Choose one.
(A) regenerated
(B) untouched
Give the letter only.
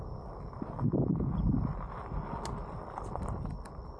B